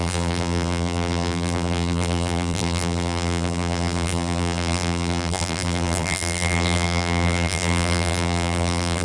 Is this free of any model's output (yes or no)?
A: no